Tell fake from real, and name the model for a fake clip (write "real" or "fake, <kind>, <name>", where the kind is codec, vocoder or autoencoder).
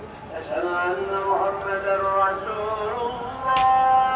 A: real